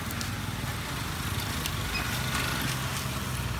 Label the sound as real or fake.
real